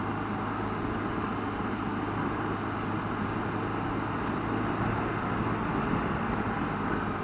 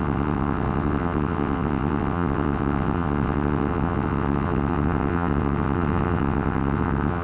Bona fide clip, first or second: first